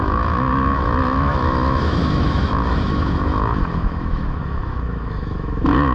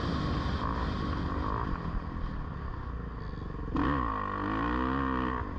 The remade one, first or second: first